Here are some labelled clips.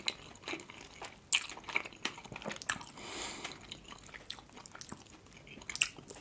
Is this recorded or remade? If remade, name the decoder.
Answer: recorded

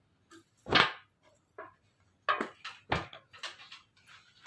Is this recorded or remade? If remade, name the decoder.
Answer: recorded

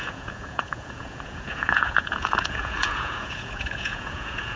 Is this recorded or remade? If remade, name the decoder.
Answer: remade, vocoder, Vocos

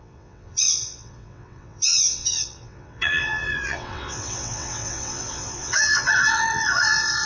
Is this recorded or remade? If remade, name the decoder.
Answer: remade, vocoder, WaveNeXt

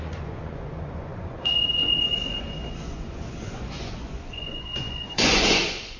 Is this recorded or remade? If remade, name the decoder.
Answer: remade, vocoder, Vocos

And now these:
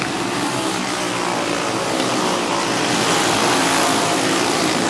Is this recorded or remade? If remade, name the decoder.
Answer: remade, vocoder, BigVGAN v2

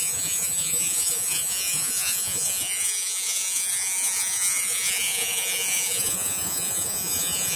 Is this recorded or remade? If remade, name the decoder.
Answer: remade, vocoder, Vocos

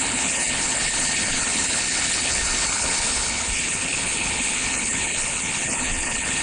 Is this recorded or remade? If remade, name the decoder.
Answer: remade, codec, HILCodec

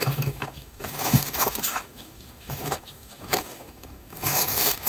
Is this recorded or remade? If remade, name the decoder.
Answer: remade, codec, DAC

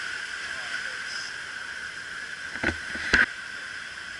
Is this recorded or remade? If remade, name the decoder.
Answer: recorded